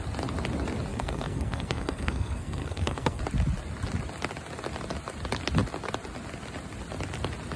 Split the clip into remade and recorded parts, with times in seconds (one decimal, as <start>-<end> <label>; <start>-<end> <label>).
0.0-0.9 recorded; 0.9-3.2 remade; 3.2-7.6 recorded